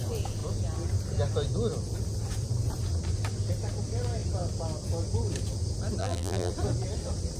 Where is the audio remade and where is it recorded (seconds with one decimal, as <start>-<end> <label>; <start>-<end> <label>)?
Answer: 0.0-6.0 recorded; 6.0-6.5 remade; 6.5-7.4 recorded